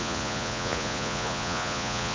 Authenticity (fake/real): fake